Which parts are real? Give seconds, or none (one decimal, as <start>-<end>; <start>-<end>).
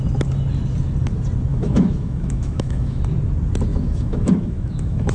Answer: 0.0-1.5; 3.0-3.7